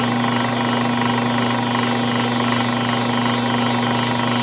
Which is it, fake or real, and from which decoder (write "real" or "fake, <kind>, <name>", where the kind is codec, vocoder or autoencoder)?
real